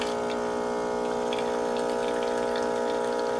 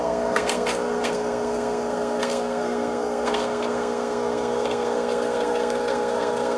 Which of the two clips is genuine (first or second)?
first